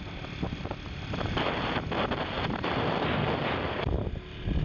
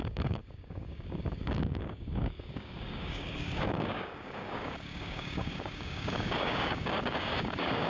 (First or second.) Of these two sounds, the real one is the first